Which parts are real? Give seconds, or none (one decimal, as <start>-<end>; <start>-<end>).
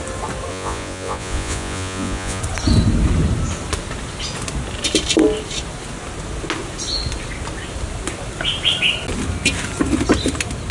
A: 0.0-0.5; 2.4-10.7